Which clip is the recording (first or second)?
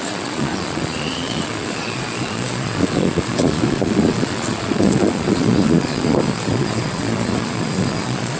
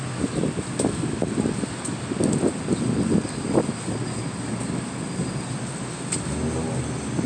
second